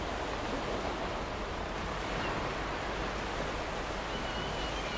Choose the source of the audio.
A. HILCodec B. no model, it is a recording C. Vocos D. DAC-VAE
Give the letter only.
B